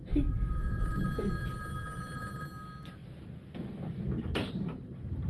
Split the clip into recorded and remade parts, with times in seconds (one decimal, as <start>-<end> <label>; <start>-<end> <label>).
0.0-5.3 recorded